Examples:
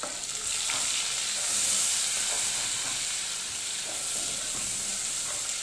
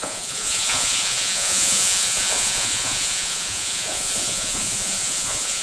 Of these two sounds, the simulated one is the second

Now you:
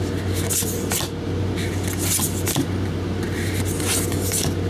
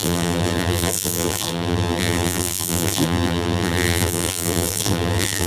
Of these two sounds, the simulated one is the second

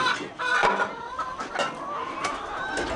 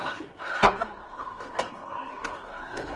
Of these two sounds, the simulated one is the second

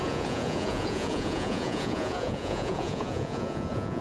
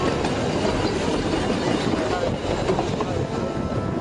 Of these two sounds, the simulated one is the first